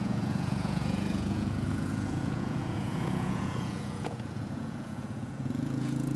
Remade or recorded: remade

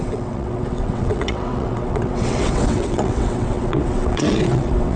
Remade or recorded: remade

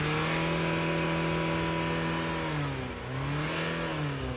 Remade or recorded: recorded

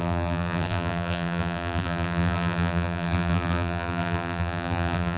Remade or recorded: remade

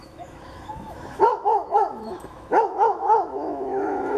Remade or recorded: remade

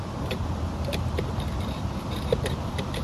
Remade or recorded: remade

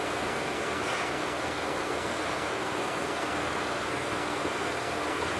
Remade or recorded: remade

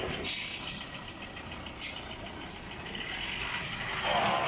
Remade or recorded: recorded